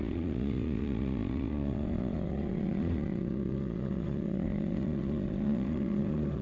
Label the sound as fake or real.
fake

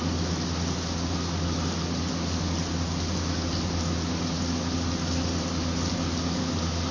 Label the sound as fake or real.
real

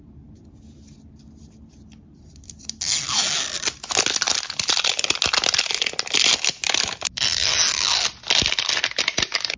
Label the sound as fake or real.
real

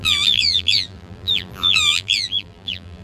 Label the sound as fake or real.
fake